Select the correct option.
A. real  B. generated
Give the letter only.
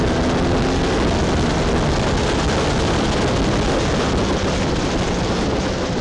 A